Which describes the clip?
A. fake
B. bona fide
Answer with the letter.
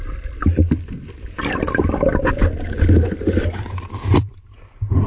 A